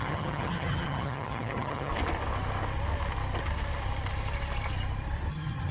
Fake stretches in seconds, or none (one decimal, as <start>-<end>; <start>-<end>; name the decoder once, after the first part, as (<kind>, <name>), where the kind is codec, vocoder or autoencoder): 0.0-1.9 (vocoder, HiFi-GAN); 5.3-5.7